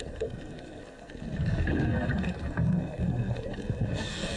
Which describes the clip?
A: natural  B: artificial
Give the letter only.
B